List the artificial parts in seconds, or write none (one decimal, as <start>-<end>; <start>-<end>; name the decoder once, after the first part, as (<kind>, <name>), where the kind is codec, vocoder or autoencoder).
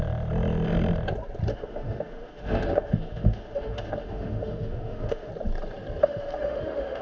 1.5-5.3 (autoencoder, DAC-VAE); 6.0-7.0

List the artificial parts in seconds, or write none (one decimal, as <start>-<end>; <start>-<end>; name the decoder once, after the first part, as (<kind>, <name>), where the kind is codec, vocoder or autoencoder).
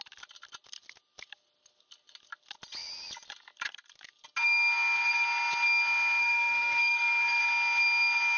6.2-7.4 (codec, SNAC)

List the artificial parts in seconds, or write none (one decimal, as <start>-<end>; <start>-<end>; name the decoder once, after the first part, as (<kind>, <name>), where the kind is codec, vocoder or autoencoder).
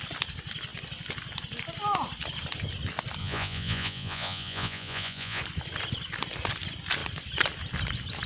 3.2-5.4 (vocoder, Vocos)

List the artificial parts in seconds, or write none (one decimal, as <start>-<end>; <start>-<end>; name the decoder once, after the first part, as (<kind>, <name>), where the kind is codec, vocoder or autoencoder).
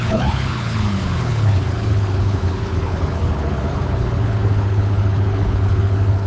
0.0-6.3 (codec, HILCodec)